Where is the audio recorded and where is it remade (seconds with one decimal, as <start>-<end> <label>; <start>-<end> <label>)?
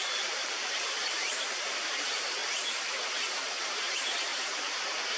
0.0-2.4 remade; 2.4-3.6 recorded; 3.6-5.2 remade